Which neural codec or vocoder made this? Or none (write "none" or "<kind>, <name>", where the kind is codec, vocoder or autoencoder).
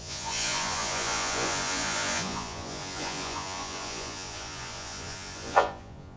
vocoder, Vocos